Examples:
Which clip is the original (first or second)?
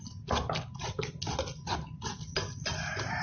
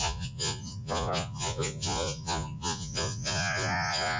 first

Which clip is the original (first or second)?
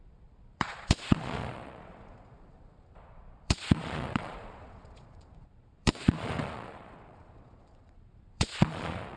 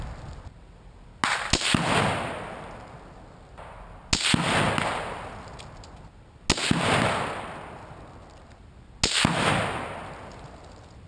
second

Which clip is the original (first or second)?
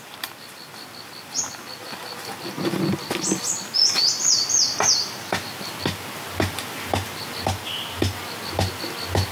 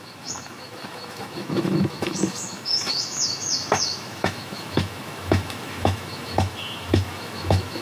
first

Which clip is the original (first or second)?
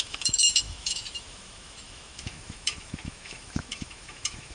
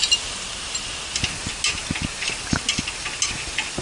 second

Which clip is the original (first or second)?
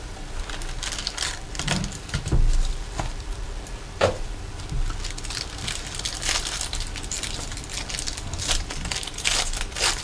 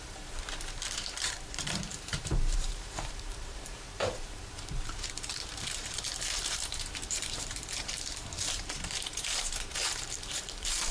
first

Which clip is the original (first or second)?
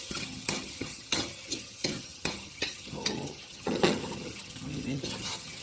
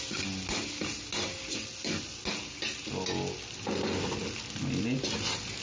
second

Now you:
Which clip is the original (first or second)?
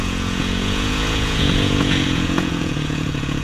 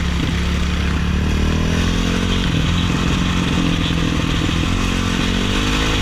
second